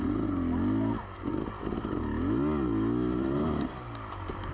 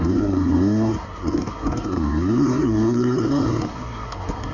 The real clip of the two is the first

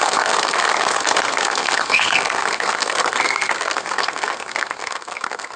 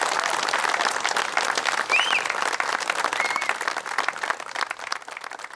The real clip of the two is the second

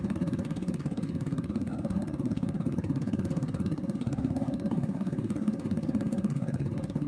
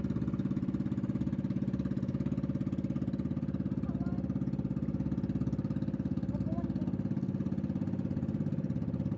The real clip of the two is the second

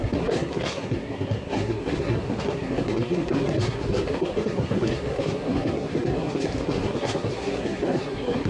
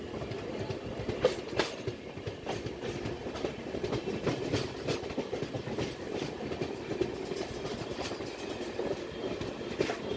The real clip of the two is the second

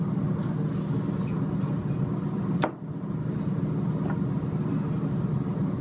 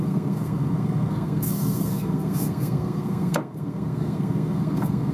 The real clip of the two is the first